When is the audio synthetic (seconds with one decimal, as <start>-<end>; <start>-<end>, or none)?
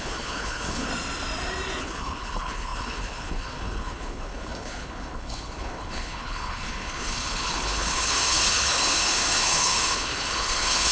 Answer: 0.0-0.9; 1.8-10.9